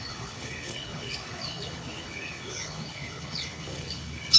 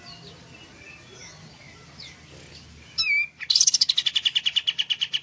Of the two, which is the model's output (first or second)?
first